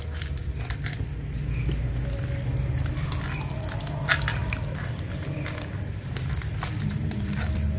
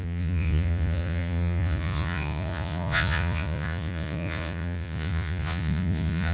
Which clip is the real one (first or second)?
first